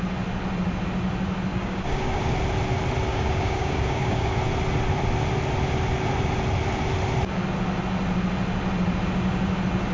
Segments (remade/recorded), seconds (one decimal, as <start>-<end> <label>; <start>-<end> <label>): 0.0-1.5 recorded; 1.5-2.2 remade; 2.2-3.1 recorded; 3.1-4.4 remade; 4.4-9.9 recorded